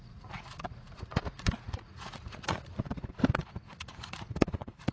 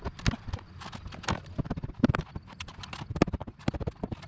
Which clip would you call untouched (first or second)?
second